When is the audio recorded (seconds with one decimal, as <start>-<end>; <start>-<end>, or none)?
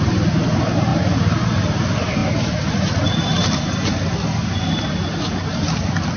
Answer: 0.9-1.6